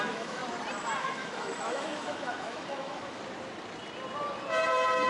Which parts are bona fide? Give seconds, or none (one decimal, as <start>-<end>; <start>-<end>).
0.4-1.0; 3.2-5.1